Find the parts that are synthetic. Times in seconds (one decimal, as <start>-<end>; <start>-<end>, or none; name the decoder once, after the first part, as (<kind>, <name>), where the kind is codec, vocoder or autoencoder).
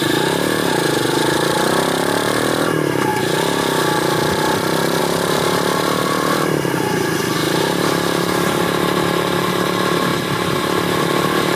0.0-3.1 (vocoder, BigVGAN v2); 5.0-11.6